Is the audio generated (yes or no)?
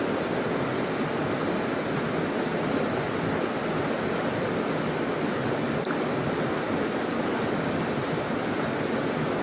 no